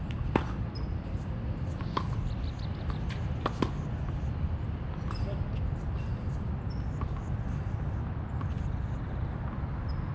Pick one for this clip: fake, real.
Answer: real